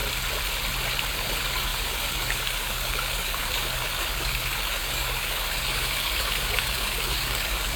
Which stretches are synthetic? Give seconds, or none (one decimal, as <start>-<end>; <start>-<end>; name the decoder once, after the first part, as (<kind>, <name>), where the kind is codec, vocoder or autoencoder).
1.1-7.8 (codec, DAC)